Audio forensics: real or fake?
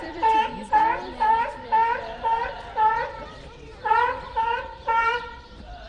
fake